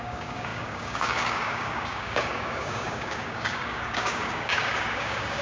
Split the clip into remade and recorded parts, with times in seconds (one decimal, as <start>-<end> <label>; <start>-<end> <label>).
0.0-5.4 remade

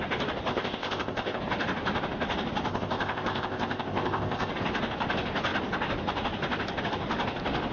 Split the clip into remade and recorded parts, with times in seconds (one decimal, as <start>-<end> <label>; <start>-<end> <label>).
0.0-0.5 recorded; 0.5-1.4 remade; 1.4-2.7 recorded; 2.7-4.5 remade; 4.5-7.7 recorded

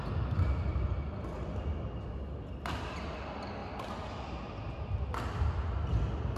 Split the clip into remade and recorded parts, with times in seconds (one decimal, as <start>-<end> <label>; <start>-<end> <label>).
0.0-0.7 recorded; 0.7-1.7 remade; 1.7-3.6 recorded; 3.6-4.8 remade; 4.8-6.4 recorded

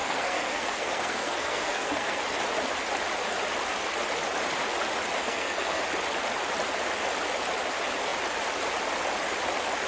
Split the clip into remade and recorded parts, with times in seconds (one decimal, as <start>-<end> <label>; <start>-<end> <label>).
0.0-2.2 remade; 2.2-5.2 recorded; 5.2-5.8 remade; 5.8-9.9 recorded